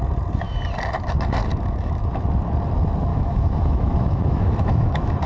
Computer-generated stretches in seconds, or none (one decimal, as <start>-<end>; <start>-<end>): 1.5-2.0; 3.1-5.3